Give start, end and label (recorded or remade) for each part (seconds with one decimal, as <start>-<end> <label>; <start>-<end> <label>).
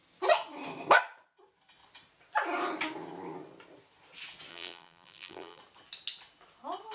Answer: 0.0-4.5 recorded; 4.5-5.6 remade; 5.6-6.9 recorded